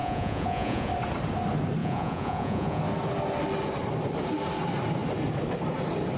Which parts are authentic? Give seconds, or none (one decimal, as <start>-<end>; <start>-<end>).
0.9-1.8; 2.8-6.2